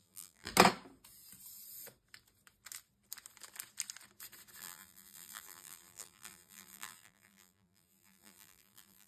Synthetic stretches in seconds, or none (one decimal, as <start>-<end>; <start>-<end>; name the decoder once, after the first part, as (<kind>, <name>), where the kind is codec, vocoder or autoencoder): 0.0-0.5 (vocoder, BigVGAN v2); 4.6-9.1